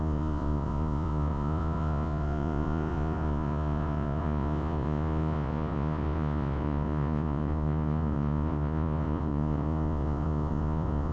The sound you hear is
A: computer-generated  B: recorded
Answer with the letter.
A